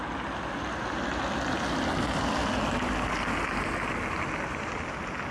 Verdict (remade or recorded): recorded